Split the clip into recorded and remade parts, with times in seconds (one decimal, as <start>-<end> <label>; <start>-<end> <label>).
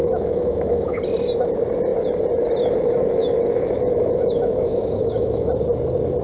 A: 0.0-1.0 remade; 1.0-3.2 recorded; 3.2-5.5 remade; 5.5-6.2 recorded